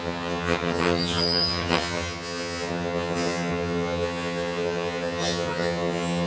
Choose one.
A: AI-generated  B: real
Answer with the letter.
A